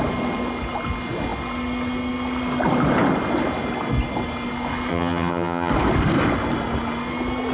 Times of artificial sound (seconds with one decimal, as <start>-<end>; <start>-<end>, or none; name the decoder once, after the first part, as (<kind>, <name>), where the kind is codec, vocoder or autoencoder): 4.9-5.7 (vocoder, HiFi-GAN)